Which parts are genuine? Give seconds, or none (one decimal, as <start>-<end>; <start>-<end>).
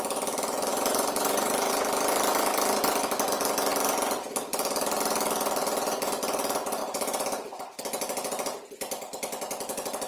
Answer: 0.0-0.7; 1.7-6.8; 7.8-10.1